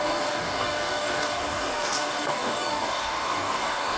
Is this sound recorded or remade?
remade